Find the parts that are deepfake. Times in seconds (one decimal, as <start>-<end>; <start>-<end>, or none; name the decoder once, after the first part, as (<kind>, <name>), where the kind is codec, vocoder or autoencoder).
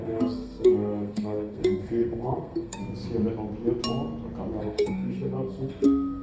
0.0-2.8 (codec, SNAC); 4.6-6.2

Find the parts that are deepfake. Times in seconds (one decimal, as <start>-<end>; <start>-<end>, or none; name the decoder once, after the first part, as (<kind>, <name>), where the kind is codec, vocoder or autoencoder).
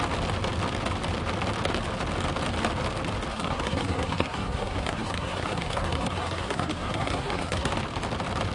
3.3-7.7 (codec, SNAC)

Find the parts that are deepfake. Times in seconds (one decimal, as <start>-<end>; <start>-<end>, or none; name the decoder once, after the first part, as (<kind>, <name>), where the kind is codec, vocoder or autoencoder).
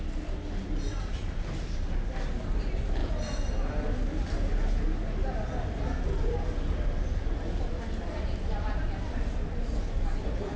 none